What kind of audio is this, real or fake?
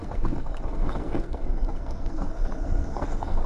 fake